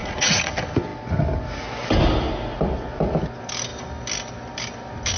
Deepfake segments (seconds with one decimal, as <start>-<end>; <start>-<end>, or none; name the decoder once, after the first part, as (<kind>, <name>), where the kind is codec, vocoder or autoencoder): 0.0-0.5 (vocoder, Vocos)